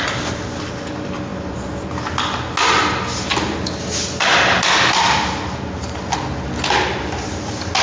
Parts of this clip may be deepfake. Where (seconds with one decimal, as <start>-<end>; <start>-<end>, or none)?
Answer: none